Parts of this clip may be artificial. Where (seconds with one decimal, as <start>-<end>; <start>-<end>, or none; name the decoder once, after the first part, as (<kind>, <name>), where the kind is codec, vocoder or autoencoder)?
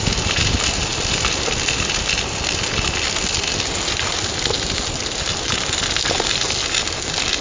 none